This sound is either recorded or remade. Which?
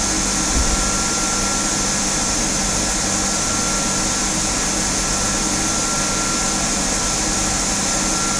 recorded